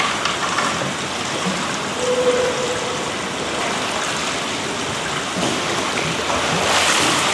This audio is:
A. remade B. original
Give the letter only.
B